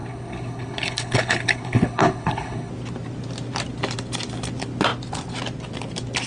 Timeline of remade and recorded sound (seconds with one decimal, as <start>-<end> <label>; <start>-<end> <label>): 0.0-2.7 remade; 2.7-6.3 recorded